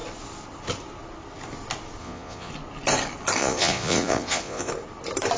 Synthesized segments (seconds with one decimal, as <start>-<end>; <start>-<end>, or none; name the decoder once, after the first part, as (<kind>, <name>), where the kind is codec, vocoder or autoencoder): 2.0-2.5 (vocoder, Vocos); 3.4-4.7